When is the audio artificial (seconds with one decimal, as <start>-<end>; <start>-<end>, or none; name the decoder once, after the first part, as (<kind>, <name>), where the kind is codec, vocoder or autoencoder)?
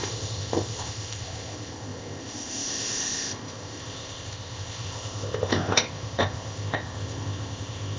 0.0-8.0 (codec, ZipCodec)